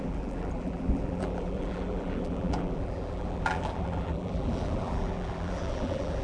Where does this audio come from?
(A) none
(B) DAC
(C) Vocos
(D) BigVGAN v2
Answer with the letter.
D